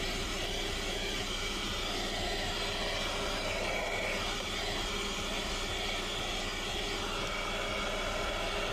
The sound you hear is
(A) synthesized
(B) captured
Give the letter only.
B